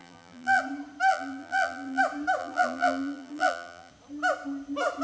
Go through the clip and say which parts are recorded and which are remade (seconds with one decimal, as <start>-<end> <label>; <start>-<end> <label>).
0.0-0.6 remade; 0.6-1.1 recorded; 1.1-2.0 remade; 2.0-2.4 recorded; 2.4-3.9 remade; 3.9-5.0 recorded